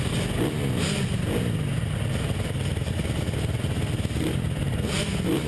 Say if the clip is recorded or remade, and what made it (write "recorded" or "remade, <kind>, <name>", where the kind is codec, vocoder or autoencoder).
recorded